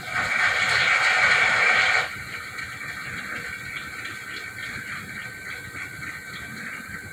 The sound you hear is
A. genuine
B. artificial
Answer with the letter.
A